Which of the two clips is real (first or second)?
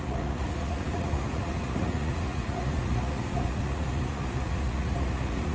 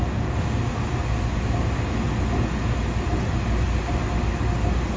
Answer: second